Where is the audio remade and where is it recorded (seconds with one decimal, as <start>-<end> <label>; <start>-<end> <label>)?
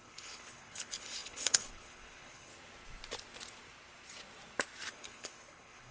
0.0-2.5 remade; 2.5-4.9 recorded; 4.9-5.9 remade